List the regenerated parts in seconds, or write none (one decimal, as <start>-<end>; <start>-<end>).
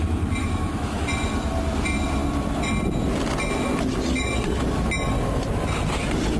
0.4-1.0